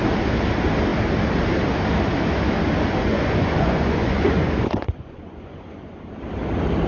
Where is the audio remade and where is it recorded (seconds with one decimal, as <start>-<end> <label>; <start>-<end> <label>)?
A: 0.0-3.1 recorded; 3.1-6.0 remade; 6.0-6.9 recorded